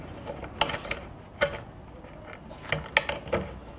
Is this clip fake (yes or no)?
no